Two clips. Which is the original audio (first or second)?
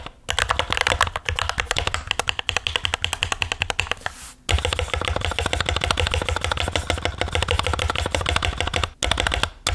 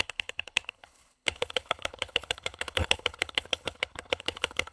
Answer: first